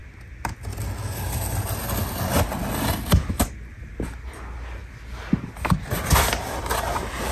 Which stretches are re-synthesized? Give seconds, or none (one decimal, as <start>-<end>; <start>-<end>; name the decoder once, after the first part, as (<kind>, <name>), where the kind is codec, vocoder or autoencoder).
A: none

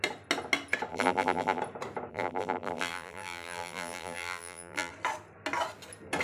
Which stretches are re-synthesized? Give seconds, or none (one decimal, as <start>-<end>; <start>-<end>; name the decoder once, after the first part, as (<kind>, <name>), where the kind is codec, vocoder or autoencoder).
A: 0.9-1.6 (vocoder, BigVGAN v2); 2.1-4.9